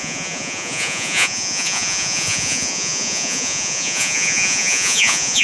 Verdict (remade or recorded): remade